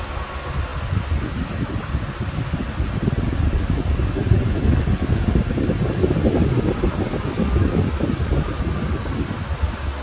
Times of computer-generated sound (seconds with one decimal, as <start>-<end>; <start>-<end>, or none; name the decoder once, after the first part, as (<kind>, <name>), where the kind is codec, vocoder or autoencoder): none